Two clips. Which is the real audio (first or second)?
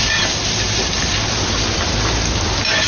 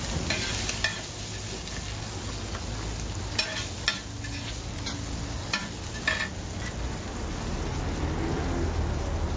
second